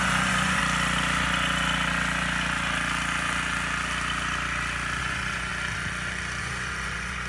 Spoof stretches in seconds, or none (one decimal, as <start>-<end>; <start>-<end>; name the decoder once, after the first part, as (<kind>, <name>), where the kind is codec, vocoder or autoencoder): 0.0-0.6 (vocoder, Vocos); 5.0-5.5; 6.4-7.3